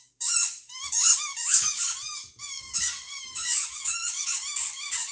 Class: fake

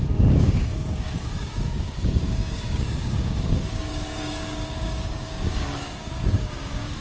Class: fake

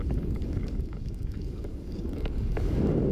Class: fake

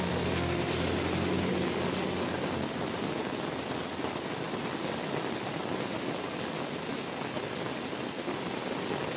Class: real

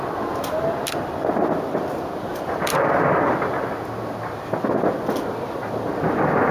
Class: real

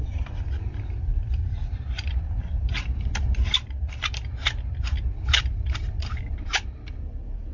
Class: real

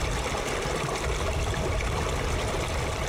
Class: real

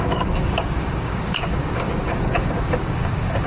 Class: fake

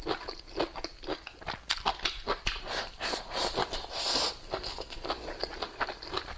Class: real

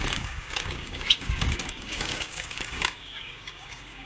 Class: fake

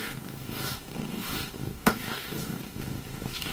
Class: fake